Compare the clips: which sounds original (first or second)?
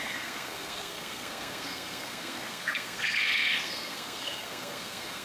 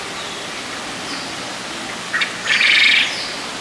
second